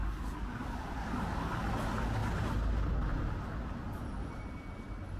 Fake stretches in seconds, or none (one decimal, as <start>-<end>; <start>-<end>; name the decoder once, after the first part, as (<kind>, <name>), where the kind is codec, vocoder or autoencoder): 0.0-1.6 (codec, DAC)